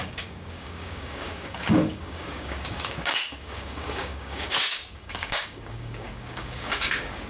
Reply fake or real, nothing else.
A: fake